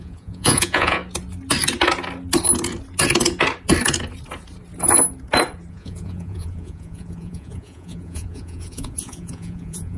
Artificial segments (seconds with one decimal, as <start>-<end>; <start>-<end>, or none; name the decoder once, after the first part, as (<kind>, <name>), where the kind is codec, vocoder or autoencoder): 0.0-1.0 (vocoder, Vocos); 5.7-10.0